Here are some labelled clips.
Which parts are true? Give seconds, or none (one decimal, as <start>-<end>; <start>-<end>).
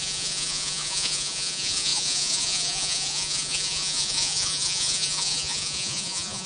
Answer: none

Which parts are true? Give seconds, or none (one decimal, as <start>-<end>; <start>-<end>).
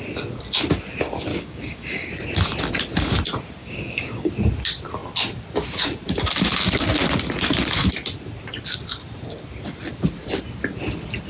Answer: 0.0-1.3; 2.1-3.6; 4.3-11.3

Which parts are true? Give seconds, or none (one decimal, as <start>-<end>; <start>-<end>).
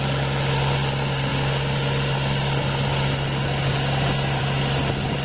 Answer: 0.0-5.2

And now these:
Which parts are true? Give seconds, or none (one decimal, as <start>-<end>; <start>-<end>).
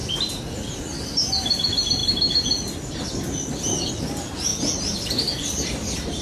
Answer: 0.0-6.2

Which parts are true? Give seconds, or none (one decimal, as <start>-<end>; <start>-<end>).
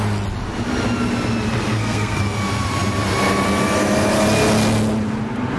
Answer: 0.0-1.6; 2.2-5.6